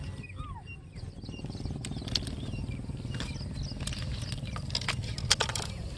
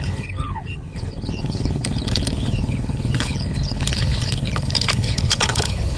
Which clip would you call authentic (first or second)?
first